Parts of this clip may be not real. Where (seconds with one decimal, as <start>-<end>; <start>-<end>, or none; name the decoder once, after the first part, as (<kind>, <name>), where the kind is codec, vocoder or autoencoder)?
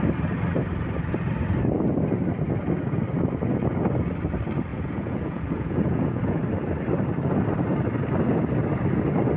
4.7-6.4 (vocoder, Vocos)